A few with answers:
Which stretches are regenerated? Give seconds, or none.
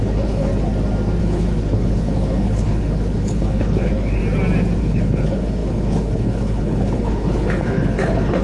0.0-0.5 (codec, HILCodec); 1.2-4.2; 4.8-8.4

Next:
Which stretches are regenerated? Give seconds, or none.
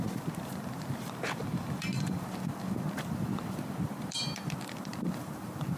0.0-5.8 (vocoder, BigVGAN v2)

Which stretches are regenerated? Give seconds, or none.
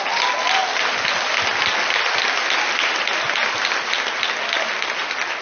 none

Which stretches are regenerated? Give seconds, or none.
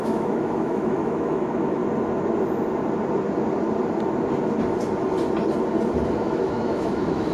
0.0-1.8 (autoencoder, DAC-VAE); 6.2-7.3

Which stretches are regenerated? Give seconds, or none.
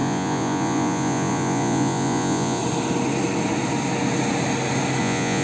0.0-2.6 (vocoder, Vocos); 5.0-5.4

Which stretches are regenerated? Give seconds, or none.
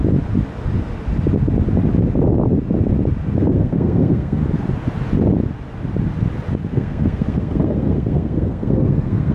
3.4-4.4 (codec, SNAC); 6.7-9.3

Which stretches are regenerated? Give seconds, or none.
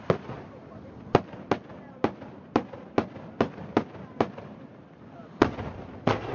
none